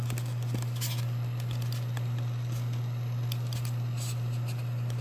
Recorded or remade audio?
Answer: recorded